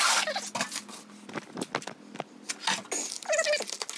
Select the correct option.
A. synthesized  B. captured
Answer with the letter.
B